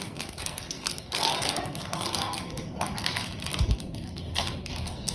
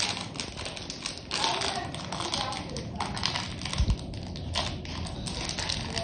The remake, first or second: first